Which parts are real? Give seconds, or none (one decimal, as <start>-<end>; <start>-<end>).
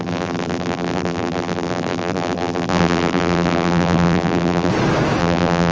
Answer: 4.7-5.2